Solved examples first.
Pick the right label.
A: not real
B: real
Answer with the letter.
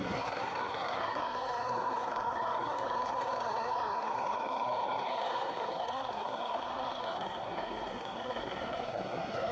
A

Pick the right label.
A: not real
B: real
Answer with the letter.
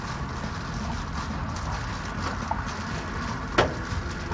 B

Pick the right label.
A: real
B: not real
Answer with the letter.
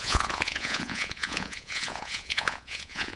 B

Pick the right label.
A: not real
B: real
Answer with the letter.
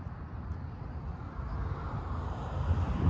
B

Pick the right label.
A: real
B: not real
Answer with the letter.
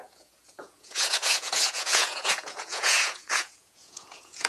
B